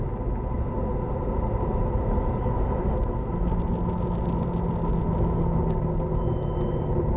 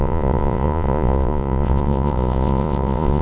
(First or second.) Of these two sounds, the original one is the first